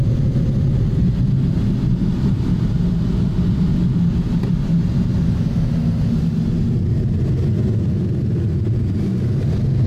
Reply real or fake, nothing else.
real